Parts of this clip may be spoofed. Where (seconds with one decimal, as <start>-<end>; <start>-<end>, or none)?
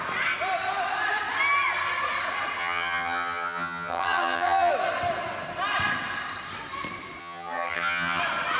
2.6-4.7; 7.2-8.2